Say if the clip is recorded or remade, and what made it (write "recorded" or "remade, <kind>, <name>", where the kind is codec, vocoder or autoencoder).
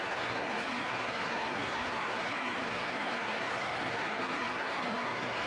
remade, codec, SNAC